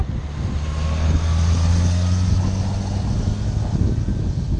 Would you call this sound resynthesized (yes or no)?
no